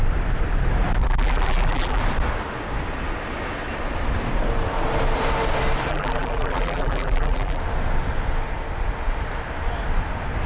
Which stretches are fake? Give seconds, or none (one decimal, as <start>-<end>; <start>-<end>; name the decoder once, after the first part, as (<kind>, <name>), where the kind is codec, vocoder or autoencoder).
1.0-2.0 (vocoder, BigVGAN v2); 5.9-7.6